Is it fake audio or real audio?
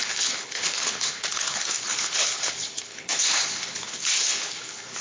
fake